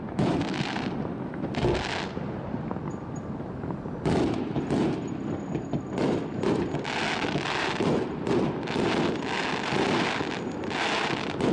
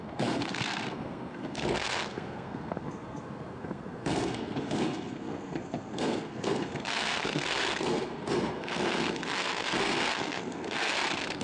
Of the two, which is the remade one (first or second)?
second